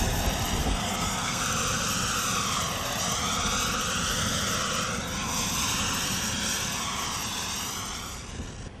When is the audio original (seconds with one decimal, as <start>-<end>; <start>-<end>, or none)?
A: 0.0-0.6; 1.4-8.8